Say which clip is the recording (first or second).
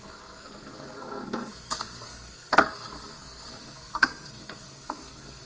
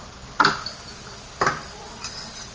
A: second